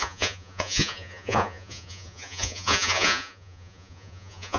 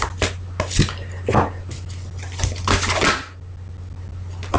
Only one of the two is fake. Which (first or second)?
first